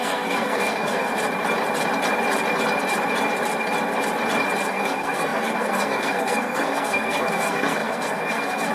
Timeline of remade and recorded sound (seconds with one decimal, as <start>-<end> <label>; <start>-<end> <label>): 0.0-1.1 remade; 1.1-4.7 recorded; 4.7-8.7 remade